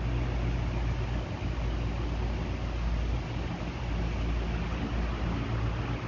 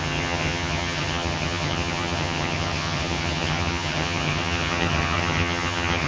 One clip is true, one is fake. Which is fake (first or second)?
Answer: second